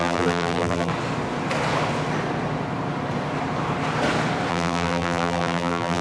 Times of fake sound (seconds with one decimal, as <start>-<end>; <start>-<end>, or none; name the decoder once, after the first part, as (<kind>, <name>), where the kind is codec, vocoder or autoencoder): 0.0-0.9 (vocoder, BigVGAN v2); 4.5-6.0